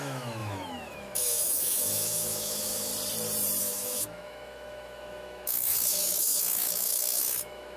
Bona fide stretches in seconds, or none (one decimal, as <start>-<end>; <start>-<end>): 2.9-3.6